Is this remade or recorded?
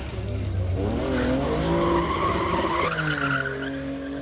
recorded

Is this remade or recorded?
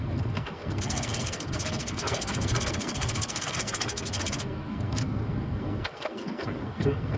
remade